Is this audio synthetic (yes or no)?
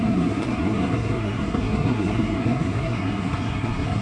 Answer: yes